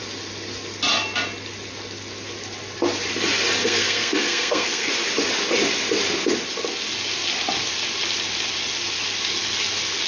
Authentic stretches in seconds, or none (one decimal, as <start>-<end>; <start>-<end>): 0.0-3.6; 4.9-10.1